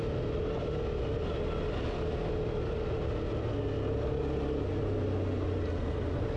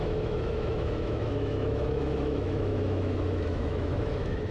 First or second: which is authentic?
first